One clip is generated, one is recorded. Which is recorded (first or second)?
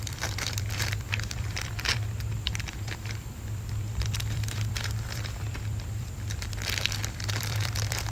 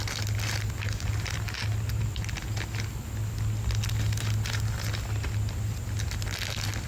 second